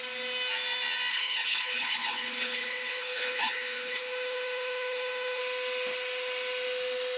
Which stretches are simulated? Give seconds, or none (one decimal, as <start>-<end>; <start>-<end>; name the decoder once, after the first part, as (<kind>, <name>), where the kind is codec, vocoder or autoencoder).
1.1-5.4 (codec, HILCodec)